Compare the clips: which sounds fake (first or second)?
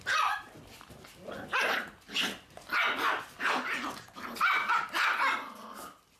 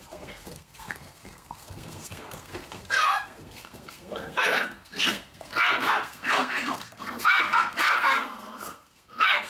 second